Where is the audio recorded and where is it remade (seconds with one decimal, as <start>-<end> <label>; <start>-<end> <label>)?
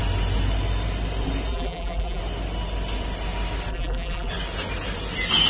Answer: 0.0-1.5 recorded; 1.5-2.2 remade; 2.2-3.7 recorded; 3.7-4.3 remade; 4.3-5.5 recorded